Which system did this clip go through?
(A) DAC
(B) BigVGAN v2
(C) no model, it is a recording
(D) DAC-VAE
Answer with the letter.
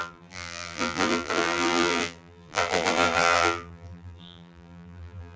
B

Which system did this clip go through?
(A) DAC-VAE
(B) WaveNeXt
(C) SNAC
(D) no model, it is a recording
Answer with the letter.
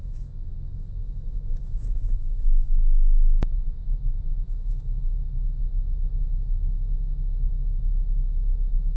A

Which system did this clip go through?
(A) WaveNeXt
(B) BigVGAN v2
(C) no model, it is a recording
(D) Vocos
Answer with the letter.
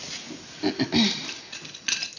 C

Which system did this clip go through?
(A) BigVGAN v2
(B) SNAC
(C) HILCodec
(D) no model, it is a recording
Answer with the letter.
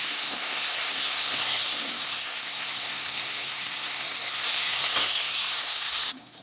B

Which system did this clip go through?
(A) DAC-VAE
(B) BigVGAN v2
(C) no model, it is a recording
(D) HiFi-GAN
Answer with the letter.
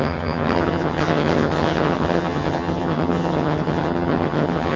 D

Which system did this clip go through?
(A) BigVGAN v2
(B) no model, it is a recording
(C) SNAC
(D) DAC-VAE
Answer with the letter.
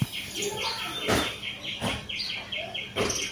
B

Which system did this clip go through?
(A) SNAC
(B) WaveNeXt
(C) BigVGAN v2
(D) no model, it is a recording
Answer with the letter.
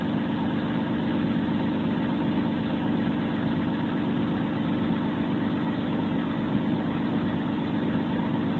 D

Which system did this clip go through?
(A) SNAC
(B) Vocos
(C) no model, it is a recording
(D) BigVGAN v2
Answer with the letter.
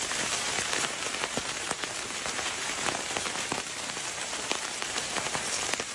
D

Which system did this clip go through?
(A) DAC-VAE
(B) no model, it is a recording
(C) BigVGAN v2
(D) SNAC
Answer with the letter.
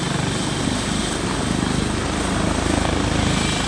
B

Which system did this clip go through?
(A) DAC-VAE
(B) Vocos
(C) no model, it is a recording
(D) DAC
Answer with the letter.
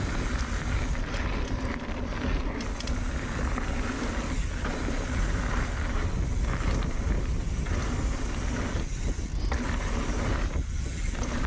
C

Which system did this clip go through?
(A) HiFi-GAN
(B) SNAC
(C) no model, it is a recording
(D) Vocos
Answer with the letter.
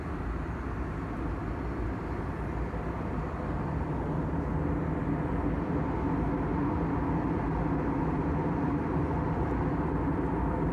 C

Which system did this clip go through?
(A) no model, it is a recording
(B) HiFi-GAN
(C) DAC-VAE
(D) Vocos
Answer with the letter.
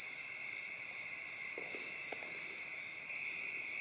A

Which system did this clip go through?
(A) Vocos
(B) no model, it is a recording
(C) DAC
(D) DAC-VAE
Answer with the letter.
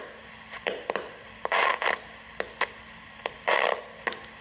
B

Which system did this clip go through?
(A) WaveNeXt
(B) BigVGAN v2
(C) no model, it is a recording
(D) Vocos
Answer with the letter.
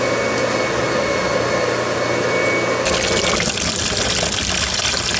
C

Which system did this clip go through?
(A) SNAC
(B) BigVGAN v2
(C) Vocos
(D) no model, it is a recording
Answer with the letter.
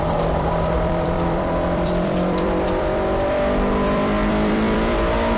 B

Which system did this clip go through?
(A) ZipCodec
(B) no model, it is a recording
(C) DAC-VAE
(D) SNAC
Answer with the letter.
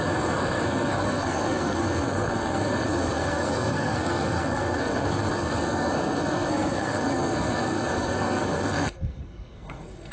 D